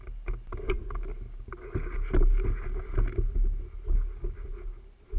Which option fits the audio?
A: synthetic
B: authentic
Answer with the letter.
B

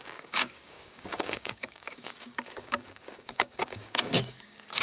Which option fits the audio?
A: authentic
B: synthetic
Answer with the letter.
B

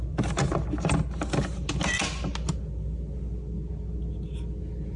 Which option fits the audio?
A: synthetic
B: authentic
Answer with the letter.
B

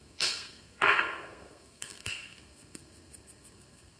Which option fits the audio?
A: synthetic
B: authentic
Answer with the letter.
A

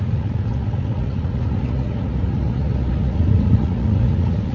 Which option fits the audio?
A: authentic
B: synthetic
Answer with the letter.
B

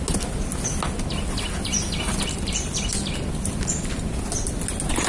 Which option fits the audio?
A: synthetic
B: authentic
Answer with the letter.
B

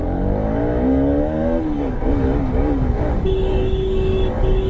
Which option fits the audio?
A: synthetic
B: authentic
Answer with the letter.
A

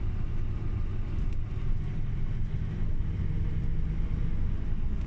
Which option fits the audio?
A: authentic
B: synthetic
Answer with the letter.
A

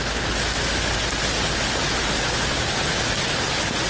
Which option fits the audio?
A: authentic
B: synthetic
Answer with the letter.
A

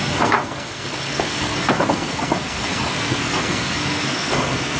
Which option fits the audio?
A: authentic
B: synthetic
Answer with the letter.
B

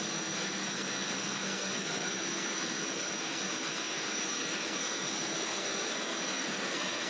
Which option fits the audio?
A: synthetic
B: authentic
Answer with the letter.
A